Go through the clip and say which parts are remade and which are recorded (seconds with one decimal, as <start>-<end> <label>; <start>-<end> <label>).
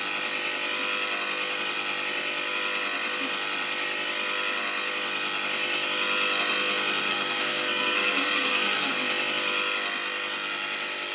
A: 0.0-7.1 recorded; 7.1-8.9 remade; 8.9-11.1 recorded